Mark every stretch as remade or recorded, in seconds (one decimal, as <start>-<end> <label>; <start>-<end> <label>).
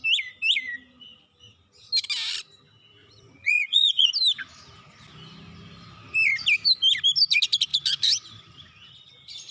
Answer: 0.0-3.0 recorded; 3.0-4.1 remade; 4.1-9.5 recorded